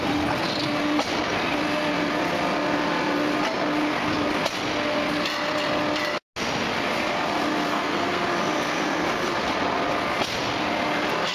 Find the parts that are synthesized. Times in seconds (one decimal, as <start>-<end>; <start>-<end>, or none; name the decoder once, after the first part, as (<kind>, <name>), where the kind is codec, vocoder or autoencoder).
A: 7.7-8.2 (codec, SNAC)